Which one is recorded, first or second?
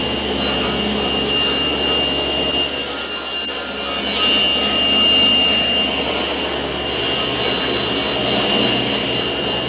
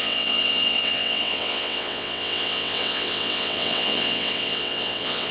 first